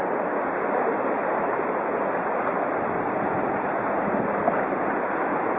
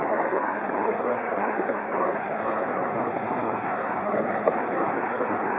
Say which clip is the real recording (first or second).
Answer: first